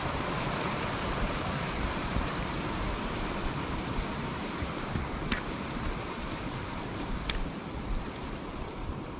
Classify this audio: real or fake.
fake